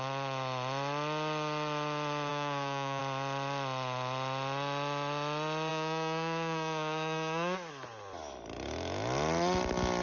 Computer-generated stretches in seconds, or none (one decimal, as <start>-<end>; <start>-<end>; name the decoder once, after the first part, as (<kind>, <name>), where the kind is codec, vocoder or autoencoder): 2.3-3.0 (codec, DAC); 5.7-7.7